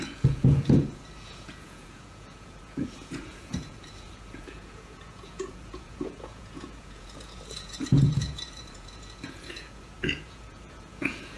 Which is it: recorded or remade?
remade